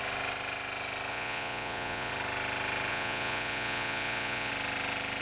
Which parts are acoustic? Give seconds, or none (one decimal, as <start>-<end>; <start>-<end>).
0.0-1.1; 2.1-2.9; 4.5-5.2